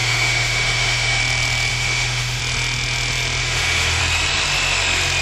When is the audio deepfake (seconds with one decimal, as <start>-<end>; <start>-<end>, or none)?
0.0-1.2; 1.7-2.4; 3.4-4.0